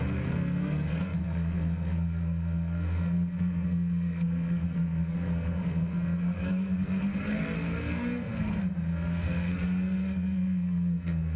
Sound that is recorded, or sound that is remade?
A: remade